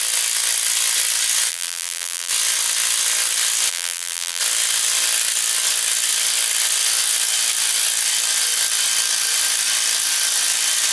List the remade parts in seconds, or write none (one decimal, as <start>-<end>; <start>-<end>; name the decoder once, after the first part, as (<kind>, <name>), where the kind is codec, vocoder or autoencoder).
1.5-2.3 (vocoder, BigVGAN v2); 3.7-4.4